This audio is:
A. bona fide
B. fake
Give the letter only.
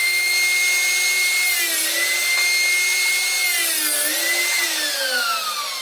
A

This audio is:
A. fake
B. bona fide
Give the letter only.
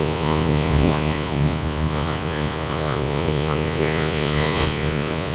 A